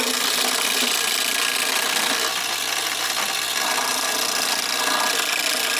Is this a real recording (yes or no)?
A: yes